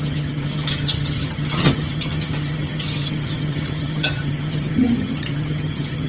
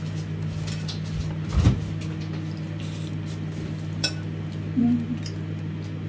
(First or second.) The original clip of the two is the second